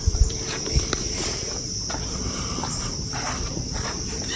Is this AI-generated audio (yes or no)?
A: yes